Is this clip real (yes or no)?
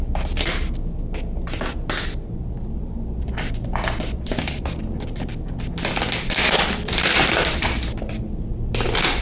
yes